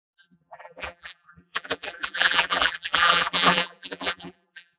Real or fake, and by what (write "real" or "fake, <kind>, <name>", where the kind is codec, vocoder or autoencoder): fake, vocoder, BigVGAN v2